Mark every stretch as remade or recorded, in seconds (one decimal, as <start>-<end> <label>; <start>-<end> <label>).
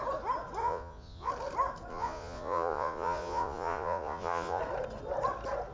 0.0-0.6 recorded; 0.6-1.3 remade; 1.3-1.9 recorded; 1.9-4.6 remade; 4.6-5.7 recorded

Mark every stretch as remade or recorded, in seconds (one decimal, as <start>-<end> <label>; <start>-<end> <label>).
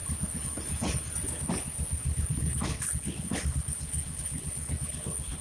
0.0-1.1 remade; 1.1-2.0 recorded; 2.0-5.4 remade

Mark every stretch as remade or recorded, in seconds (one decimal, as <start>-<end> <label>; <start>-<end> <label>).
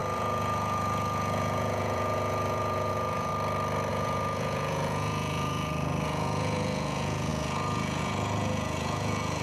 0.0-3.3 remade; 3.3-3.9 recorded; 3.9-9.4 remade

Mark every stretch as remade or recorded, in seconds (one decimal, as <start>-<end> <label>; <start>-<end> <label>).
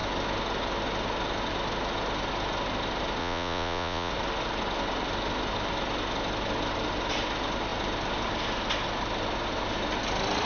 0.0-3.2 recorded; 3.2-4.1 remade; 4.1-10.5 recorded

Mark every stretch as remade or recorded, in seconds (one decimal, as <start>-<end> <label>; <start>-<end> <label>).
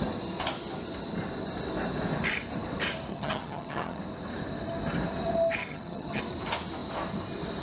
0.0-3.1 recorded; 3.1-4.0 remade; 4.0-5.7 recorded; 5.7-6.2 remade; 6.2-7.6 recorded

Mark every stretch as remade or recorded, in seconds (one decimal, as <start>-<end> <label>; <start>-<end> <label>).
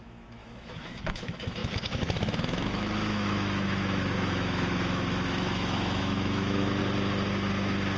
0.0-6.8 remade; 6.8-8.0 recorded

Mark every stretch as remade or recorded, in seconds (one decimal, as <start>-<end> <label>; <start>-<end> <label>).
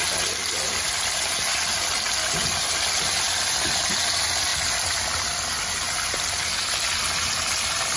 0.0-8.0 recorded